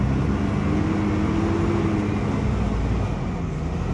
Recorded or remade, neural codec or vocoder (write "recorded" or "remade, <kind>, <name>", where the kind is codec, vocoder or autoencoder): recorded